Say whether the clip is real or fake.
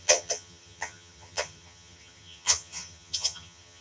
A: fake